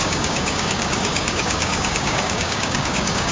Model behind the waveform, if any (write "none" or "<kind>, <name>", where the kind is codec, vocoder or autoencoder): codec, DAC